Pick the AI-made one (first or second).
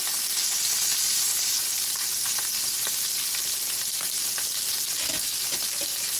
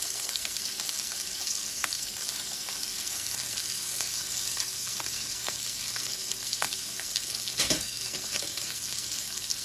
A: second